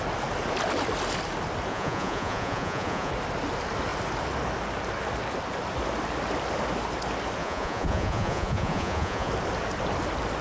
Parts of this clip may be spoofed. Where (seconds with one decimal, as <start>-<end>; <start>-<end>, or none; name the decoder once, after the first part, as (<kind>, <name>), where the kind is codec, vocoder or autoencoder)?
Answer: 1.7-3.1 (vocoder, Vocos); 7.4-9.3